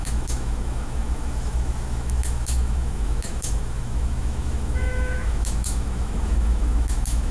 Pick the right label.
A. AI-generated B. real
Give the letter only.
A